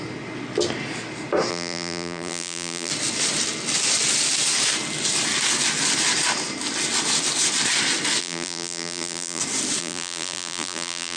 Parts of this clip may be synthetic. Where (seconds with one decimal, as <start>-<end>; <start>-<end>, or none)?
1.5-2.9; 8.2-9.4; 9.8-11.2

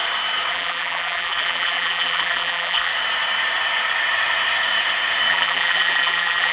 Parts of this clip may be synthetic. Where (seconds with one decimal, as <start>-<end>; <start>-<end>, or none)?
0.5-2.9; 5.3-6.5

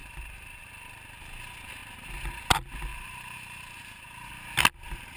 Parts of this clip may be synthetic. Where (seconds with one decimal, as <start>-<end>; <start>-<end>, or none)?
0.0-0.7; 2.9-4.3

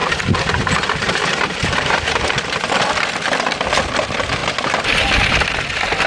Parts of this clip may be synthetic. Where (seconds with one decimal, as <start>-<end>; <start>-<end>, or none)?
0.0-2.7

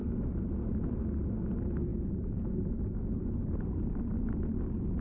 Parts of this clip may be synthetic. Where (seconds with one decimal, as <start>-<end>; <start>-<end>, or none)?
none

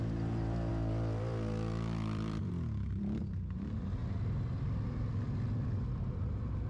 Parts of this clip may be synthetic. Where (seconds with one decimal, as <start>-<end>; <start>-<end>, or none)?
0.7-3.0; 4.0-6.3